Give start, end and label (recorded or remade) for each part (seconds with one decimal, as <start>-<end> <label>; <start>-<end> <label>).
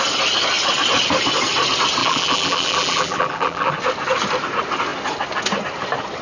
0.0-2.0 recorded; 2.0-3.7 remade; 3.7-6.2 recorded